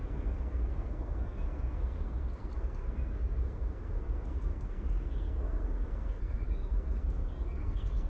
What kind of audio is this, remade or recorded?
remade